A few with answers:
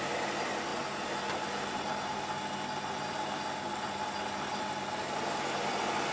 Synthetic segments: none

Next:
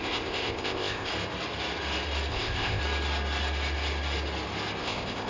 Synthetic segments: 0.0-1.1 (codec, ZipCodec); 2.3-2.8; 4.8-5.3

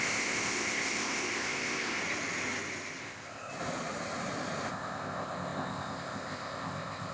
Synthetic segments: 0.0-2.0 (codec, ZipCodec); 3.0-3.5; 4.7-7.1

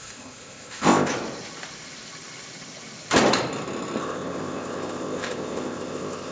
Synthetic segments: 0.0-1.1 (codec, ZipCodec); 4.0-6.3

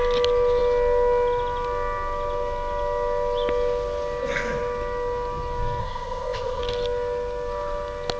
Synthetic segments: 5.8-6.6 (codec, ZipCodec)

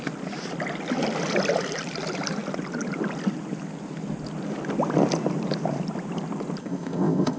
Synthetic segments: 6.6-7.4 (codec, ZipCodec)